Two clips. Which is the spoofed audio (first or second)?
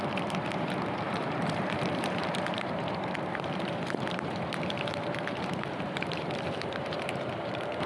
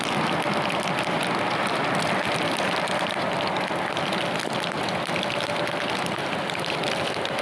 first